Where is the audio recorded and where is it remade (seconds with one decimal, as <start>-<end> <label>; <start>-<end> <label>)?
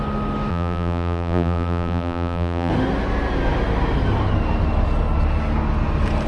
0.0-0.5 recorded; 0.5-2.7 remade; 2.7-6.3 recorded